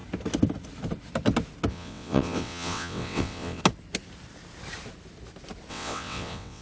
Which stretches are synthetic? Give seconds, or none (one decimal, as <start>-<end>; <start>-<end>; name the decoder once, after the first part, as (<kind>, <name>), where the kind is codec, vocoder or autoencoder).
1.7-3.6 (vocoder, WaveNeXt); 5.7-6.6